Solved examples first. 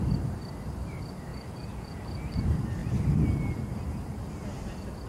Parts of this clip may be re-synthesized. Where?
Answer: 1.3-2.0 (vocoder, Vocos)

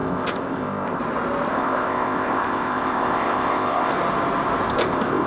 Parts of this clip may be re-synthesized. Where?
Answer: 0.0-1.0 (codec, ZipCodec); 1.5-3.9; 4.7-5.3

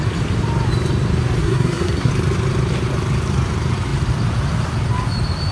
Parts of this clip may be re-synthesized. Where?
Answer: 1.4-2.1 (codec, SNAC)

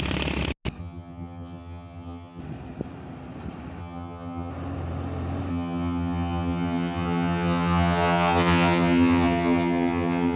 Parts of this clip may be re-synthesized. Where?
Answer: 0.8-2.4 (vocoder, HiFi-GAN); 3.8-4.5; 5.5-10.4

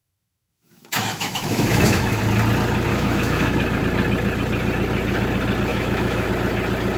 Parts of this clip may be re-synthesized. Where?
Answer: 0.0-2.2 (autoencoder, DAC-VAE); 2.9-3.8; 5.7-6.3

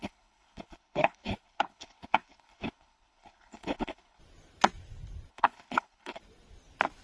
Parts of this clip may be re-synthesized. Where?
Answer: 0.0-4.2 (codec, HILCodec); 5.3-6.2